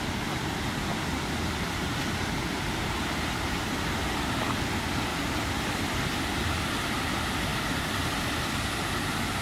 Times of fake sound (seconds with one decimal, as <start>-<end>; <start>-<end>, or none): 0.9-2.8; 5.1-5.9